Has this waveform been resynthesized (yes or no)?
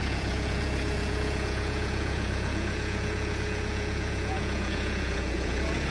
yes